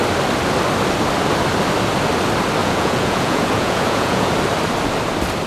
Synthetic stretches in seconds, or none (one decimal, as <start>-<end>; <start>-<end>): 2.6-4.3